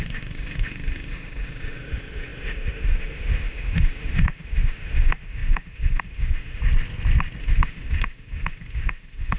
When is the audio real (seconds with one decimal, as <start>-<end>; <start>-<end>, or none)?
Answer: 6.6-7.4